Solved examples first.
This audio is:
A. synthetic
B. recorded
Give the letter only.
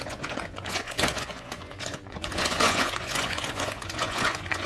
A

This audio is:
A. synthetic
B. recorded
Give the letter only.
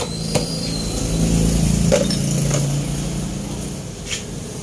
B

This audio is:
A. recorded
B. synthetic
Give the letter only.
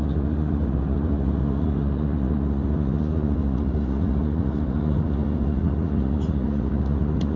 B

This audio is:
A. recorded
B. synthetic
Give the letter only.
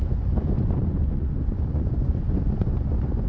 B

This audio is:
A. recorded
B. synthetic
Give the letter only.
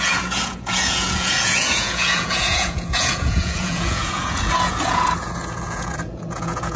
B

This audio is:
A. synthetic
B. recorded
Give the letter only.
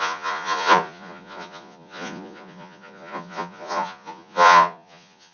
A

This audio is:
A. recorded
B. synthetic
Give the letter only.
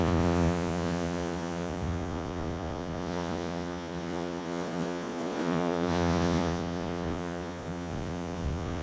B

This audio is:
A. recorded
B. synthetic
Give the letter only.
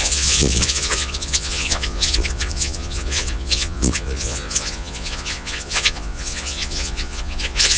B